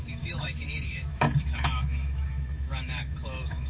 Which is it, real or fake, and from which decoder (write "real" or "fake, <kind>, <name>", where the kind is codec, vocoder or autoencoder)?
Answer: fake, autoencoder, DAC-VAE